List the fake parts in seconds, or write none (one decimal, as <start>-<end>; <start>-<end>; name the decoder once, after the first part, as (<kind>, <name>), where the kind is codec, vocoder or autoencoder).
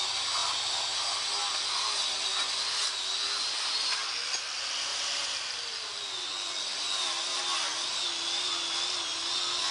0.4-1.1 (vocoder, BigVGAN v2); 6.7-7.4